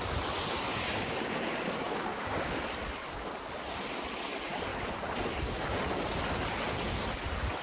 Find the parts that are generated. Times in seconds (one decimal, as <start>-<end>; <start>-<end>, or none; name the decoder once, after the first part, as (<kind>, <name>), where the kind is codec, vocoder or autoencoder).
0.7-2.6 (codec, DAC)